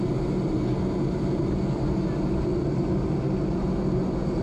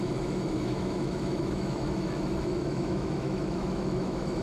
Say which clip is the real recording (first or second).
first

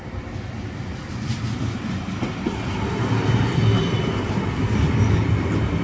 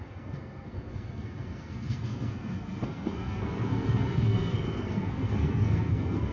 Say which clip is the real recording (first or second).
first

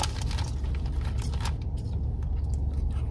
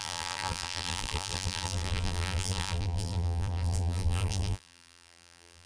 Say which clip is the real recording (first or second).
first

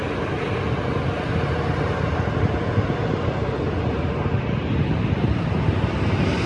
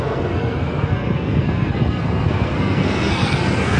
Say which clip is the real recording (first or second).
first